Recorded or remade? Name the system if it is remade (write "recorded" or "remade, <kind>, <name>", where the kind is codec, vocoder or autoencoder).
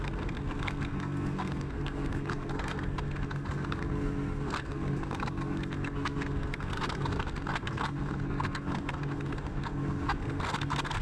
remade, codec, SNAC